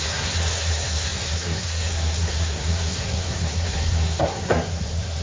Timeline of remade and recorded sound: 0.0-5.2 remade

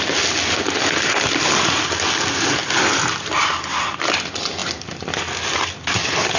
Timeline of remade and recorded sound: 0.0-6.4 recorded